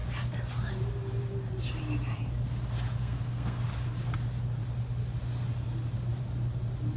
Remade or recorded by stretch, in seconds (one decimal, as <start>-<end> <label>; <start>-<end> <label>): 0.0-3.0 recorded; 3.0-3.6 remade; 3.6-7.0 recorded